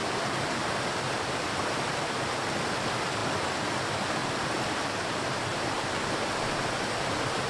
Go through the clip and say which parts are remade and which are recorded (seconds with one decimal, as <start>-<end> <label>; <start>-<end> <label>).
0.0-4.2 recorded; 4.2-5.8 remade; 5.8-7.5 recorded